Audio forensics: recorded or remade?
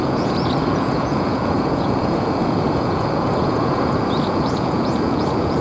remade